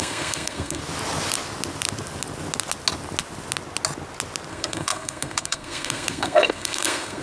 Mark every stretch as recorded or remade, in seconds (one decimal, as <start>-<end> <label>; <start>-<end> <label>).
0.0-0.8 remade; 0.8-4.5 recorded; 4.5-7.2 remade